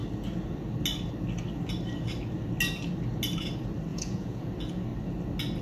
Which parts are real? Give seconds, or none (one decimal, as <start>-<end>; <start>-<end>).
0.0-3.9; 4.5-5.6